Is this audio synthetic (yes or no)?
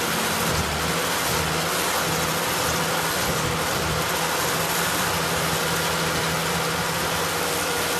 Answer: no